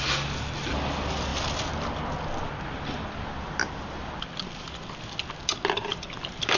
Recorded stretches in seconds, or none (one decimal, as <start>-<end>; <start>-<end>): 0.0-6.6